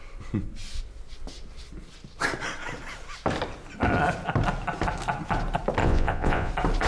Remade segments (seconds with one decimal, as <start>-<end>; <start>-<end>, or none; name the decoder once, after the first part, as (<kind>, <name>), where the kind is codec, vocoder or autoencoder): 5.8-6.5 (vocoder, Vocos)